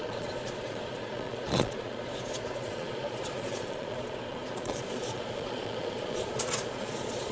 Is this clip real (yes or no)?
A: no